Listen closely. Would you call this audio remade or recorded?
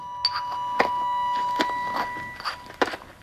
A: recorded